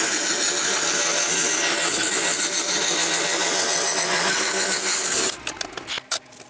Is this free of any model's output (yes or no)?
yes